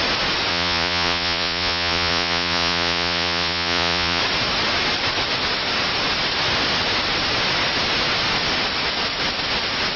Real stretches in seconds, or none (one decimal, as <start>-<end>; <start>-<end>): 0.0-0.5; 4.2-10.0